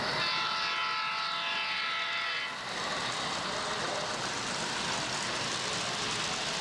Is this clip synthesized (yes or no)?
no